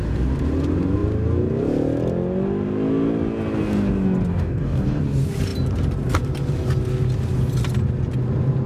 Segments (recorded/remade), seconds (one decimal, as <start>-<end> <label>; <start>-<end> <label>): 0.0-4.3 recorded; 4.3-5.0 remade; 5.0-8.7 recorded